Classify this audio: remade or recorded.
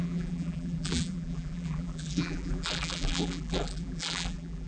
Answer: remade